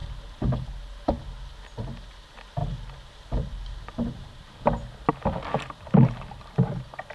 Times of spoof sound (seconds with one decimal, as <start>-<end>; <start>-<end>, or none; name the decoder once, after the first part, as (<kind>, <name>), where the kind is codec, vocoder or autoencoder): none